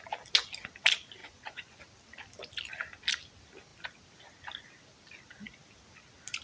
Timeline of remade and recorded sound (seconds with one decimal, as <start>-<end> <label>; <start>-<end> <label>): 0.0-1.2 recorded; 1.2-1.8 remade; 1.8-6.4 recorded